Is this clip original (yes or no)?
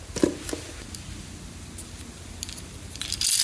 yes